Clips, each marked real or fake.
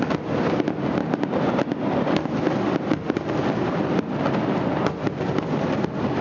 real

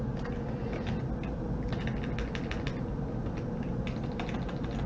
real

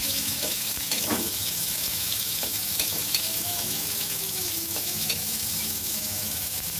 fake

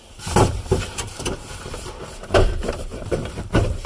fake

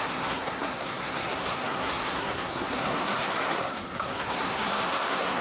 fake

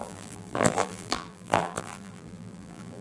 fake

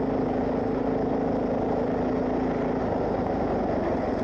real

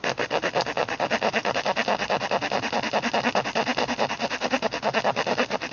real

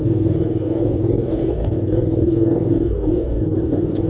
fake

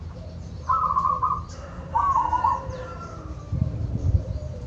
fake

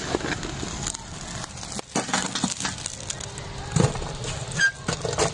real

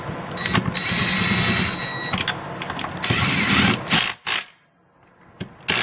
real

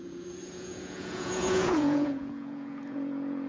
fake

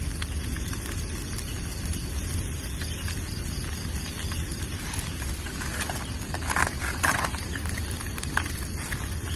real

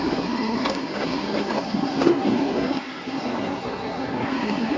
fake